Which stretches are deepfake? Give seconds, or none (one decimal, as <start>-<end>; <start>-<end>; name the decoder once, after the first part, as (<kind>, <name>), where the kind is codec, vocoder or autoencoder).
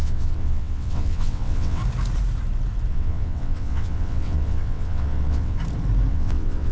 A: 0.0-1.8 (vocoder, WaveNeXt); 2.9-5.6; 6.1-6.7